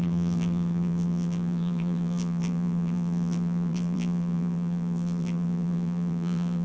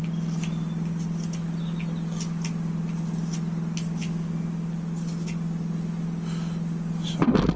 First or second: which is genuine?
second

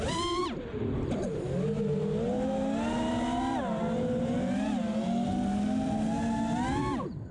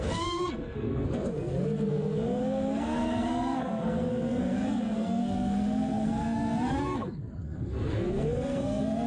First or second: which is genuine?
first